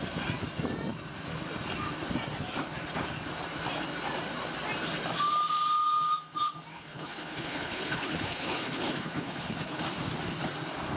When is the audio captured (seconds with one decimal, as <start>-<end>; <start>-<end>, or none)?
0.0-6.7; 9.8-11.0